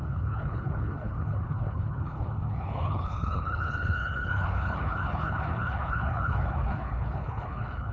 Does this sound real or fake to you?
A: fake